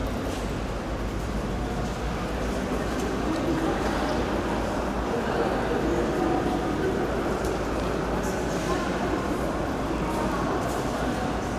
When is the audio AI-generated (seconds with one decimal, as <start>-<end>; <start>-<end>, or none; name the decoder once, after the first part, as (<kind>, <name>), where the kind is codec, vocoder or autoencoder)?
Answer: none